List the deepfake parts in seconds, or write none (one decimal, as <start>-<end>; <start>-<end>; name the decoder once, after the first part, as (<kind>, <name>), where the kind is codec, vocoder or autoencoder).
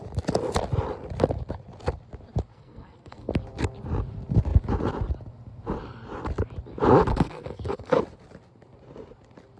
2.5-3.3 (codec, SNAC); 7.1-8.0